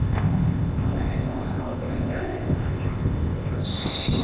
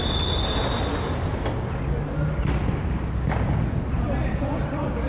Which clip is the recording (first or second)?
second